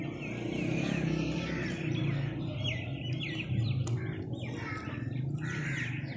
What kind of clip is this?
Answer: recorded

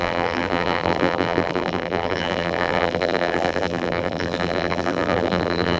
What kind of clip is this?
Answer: remade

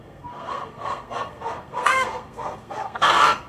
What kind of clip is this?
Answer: remade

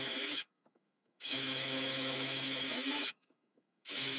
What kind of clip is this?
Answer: remade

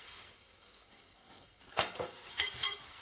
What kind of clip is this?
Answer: remade